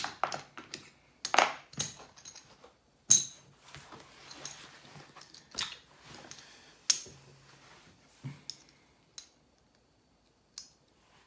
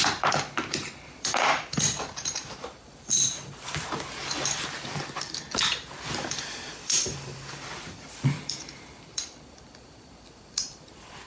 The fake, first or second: second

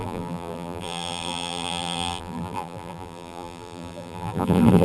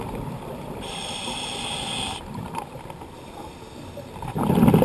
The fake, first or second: first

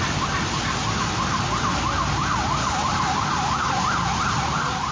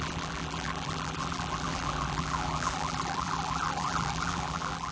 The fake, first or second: second